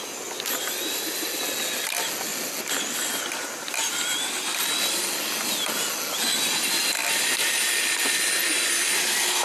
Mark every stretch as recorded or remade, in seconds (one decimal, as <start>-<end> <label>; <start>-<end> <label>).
0.0-9.4 recorded